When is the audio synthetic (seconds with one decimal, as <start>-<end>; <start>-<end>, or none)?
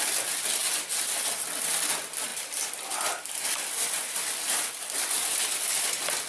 2.3-5.7